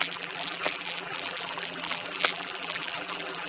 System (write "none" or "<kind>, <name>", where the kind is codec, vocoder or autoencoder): vocoder, BigVGAN v2